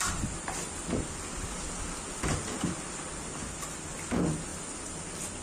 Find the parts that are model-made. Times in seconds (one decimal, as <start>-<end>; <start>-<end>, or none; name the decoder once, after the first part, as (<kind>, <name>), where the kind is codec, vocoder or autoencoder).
none